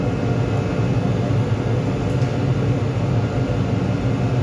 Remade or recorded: recorded